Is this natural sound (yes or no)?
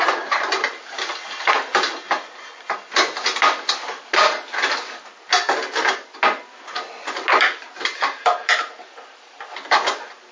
yes